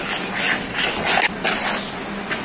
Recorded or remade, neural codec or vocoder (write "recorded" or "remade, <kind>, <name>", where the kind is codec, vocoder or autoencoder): recorded